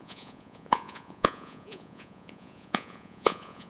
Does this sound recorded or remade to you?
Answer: remade